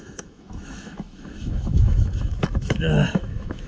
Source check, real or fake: fake